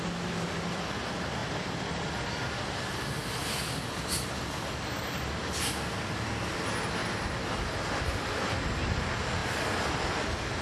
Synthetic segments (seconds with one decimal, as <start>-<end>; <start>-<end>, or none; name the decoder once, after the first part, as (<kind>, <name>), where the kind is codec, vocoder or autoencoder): 1.4-2.3 (vocoder, BigVGAN v2); 3.2-6.5; 9.4-10.1